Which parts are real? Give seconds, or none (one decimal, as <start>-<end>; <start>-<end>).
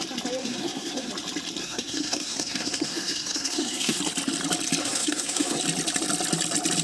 0.0-0.4; 1.1-1.6; 4.0-4.8; 5.6-6.8